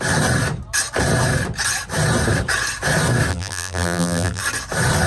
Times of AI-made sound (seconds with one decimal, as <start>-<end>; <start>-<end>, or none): 3.3-4.4